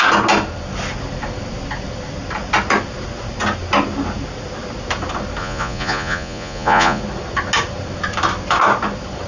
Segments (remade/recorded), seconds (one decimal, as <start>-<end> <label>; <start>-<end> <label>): 0.0-5.4 recorded; 5.4-7.0 remade; 7.0-9.3 recorded